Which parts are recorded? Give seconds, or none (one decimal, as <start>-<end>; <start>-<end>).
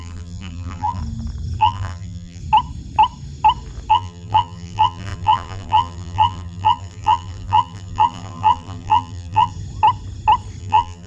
1.0-1.6; 2.4-3.9; 9.5-10.6